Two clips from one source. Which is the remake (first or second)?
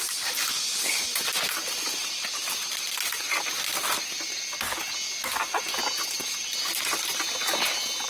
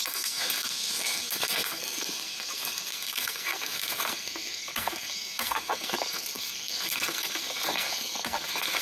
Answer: second